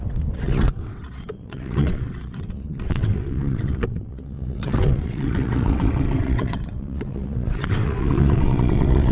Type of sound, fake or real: fake